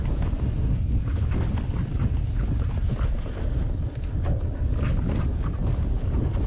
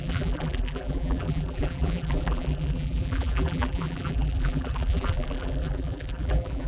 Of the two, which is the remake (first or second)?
second